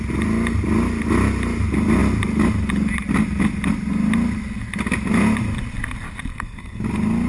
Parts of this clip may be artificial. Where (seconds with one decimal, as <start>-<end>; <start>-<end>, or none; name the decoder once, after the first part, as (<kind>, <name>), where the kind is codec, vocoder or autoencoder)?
6.3-6.8 (codec, SNAC)